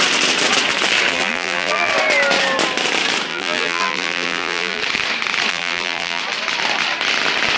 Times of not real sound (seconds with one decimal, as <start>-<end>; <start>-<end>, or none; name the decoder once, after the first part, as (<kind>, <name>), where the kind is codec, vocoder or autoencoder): 1.1-1.9 (vocoder, BigVGAN v2); 3.3-4.8; 5.5-6.2